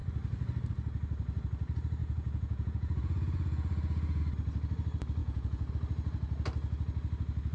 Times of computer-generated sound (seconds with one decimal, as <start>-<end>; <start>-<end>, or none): 2.0-4.2; 5.2-5.7